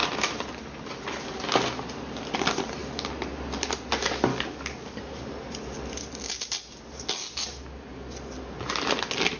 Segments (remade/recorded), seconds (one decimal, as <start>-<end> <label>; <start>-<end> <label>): 0.0-4.3 recorded; 4.3-5.0 remade; 5.0-9.4 recorded